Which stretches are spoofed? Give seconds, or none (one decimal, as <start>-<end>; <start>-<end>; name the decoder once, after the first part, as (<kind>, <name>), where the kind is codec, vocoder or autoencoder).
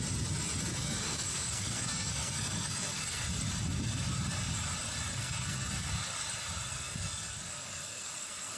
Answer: 0.7-3.3 (codec, SNAC); 5.1-5.9; 6.7-8.6